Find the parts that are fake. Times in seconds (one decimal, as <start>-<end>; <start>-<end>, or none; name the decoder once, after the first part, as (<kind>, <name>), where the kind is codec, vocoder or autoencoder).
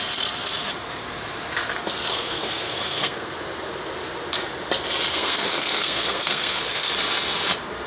2.1-3.3 (codec, SNAC); 5.1-6.9